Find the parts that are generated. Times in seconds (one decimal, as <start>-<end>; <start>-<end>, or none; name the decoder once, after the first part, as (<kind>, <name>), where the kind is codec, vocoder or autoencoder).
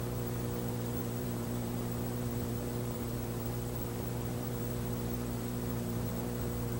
0.0-6.8 (vocoder, BigVGAN v2)